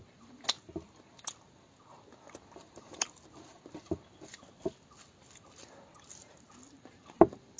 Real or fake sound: real